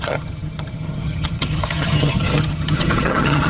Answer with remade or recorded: remade